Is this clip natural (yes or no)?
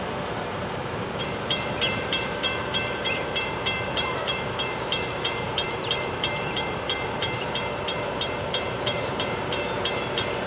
no